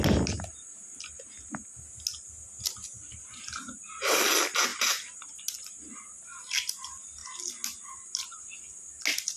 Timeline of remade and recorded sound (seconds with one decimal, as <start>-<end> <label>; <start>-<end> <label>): 0.0-9.4 recorded